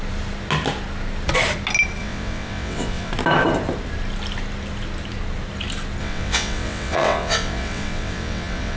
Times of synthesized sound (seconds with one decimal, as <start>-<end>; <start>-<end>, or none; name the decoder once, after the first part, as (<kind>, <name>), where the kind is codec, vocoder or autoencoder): 2.0-3.1 (vocoder, WaveNeXt); 6.0-8.8